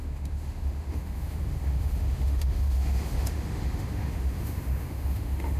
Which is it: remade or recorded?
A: remade